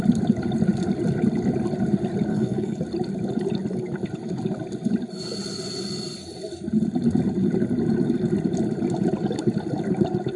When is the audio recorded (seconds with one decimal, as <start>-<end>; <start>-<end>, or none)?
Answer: 0.0-2.3; 2.8-10.4

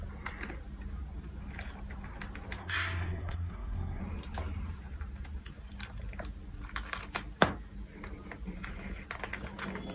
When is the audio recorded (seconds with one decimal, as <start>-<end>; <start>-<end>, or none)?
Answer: 0.0-2.6; 4.0-9.9

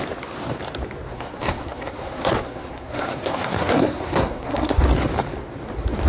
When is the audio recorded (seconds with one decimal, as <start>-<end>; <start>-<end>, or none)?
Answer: 0.0-1.1; 4.8-6.1

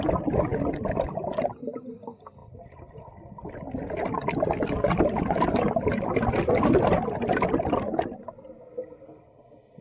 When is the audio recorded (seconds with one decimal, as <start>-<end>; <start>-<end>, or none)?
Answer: 0.0-9.8

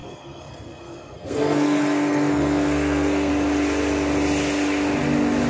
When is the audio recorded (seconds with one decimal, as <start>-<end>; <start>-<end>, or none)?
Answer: 3.3-5.5

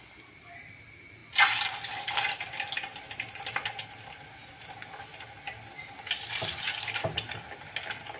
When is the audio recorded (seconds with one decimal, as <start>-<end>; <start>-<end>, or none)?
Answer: 0.0-8.2

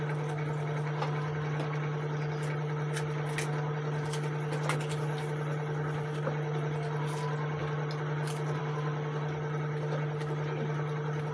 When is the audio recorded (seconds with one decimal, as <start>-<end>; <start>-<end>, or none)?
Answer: 0.0-11.3

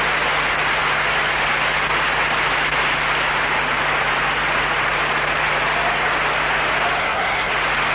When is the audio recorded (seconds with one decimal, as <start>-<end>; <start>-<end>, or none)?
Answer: 0.0-7.0; 7.5-7.9